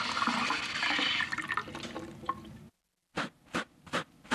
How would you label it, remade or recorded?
recorded